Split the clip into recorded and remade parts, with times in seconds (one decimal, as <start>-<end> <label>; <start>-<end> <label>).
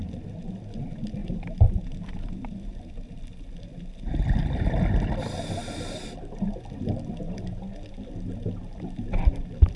0.0-1.2 recorded; 1.2-2.9 remade; 2.9-9.8 recorded